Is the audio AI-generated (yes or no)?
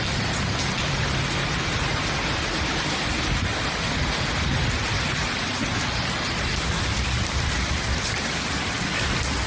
no